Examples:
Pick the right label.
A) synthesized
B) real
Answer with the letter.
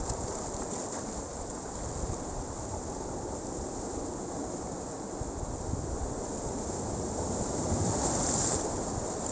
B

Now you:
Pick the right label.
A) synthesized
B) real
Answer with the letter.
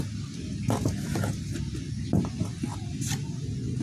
B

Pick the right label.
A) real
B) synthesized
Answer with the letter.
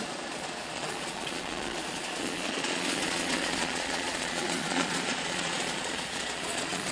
B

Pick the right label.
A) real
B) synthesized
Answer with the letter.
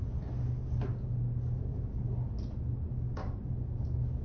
A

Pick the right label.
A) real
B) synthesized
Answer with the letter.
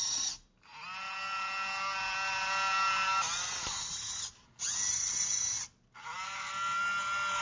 A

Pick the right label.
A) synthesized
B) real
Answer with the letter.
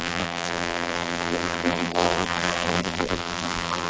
A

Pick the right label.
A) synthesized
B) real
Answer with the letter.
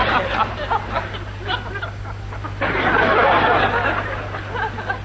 B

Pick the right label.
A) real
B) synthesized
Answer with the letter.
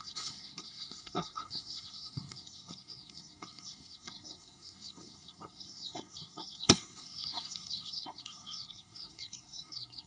B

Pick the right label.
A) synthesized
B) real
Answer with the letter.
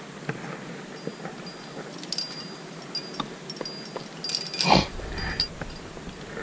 B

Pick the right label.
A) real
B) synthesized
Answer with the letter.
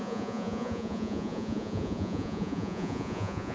B